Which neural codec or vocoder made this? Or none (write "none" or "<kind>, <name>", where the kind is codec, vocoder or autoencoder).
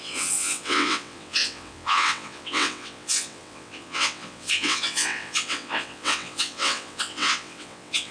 vocoder, WaveNeXt